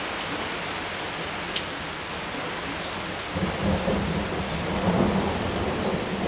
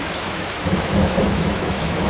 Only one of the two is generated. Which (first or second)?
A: second